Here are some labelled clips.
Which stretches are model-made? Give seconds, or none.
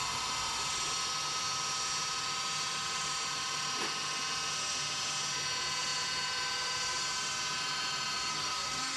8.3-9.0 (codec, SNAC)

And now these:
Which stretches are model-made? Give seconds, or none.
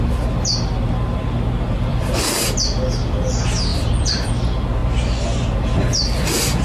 1.9-2.4 (vocoder, BigVGAN v2); 3.7-4.3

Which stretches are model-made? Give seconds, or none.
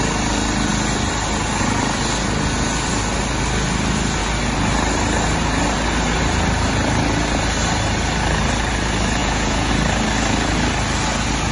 9.2-9.7 (vocoder, Vocos)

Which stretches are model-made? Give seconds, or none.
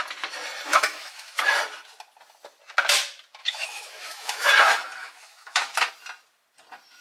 0.7-1.4 (autoencoder, DAC-VAE); 3.4-4.5; 5.0-5.9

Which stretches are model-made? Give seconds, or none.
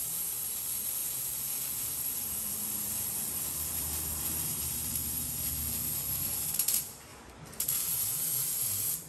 0.0-7.1 (vocoder, BigVGAN v2); 7.6-9.1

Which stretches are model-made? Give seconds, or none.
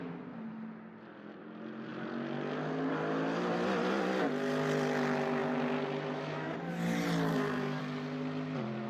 7.3-7.8 (codec, SNAC)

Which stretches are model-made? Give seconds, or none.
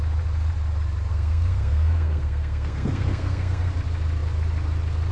1.1-3.7 (codec, SNAC)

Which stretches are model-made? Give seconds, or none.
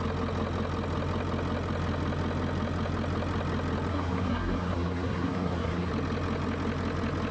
3.9-5.9 (codec, SNAC)